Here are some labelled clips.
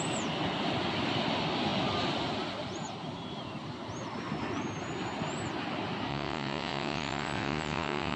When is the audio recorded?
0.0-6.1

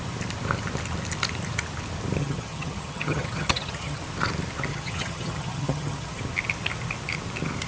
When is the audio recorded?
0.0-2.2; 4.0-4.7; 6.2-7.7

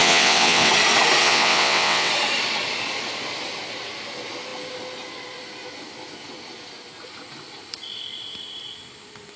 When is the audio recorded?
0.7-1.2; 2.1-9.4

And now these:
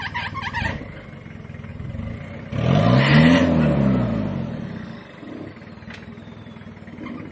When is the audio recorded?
0.0-7.3

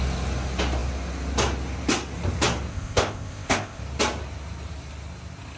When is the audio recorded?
0.0-2.7; 3.8-5.6

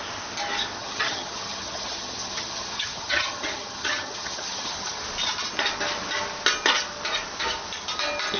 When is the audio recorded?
0.0-0.8; 5.0-8.4

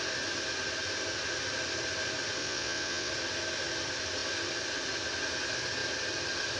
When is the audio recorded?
0.0-2.4; 3.1-6.6